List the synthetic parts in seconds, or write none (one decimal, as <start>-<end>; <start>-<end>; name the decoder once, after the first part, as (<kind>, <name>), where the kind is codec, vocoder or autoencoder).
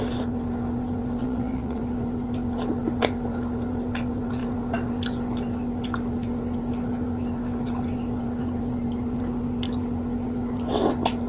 1.2-1.8 (vocoder, WaveNeXt)